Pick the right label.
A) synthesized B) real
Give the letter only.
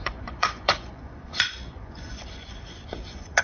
A